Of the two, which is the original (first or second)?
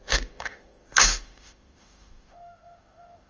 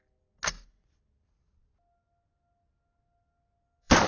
second